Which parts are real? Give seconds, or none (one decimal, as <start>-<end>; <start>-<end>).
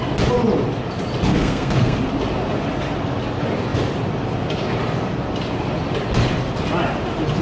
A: 0.0-1.3; 2.0-7.4